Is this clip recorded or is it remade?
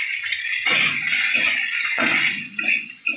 remade